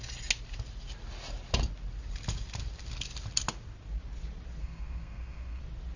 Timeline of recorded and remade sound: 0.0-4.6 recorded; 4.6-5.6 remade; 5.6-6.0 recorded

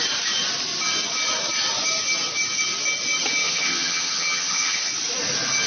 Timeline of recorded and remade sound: 0.0-3.4 recorded; 3.4-4.9 remade; 4.9-5.7 recorded

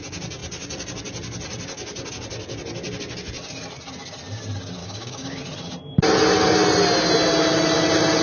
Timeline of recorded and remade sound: 0.0-4.8 recorded; 4.8-5.4 remade; 5.4-8.2 recorded

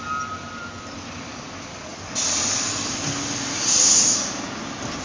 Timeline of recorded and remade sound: 0.0-1.9 recorded; 1.9-3.0 remade; 3.0-5.0 recorded

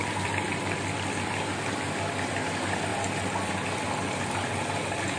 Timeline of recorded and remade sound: 0.0-5.2 recorded

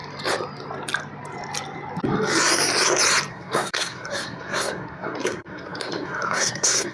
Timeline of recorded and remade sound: 0.0-3.3 recorded; 3.3-6.9 remade

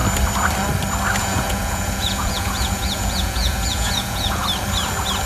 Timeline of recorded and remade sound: 0.0-1.2 recorded; 1.2-4.4 remade; 4.4-5.3 recorded